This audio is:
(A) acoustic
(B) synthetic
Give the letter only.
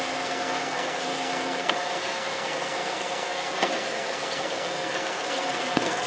B